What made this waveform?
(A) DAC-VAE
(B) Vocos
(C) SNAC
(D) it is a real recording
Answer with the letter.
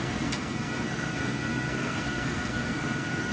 C